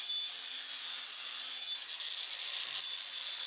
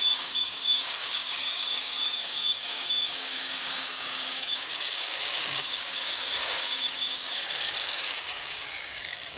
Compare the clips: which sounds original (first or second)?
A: first